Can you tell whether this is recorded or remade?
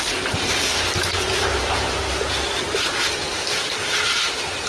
remade